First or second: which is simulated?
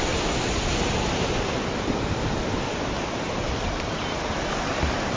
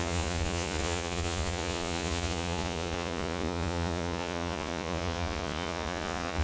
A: second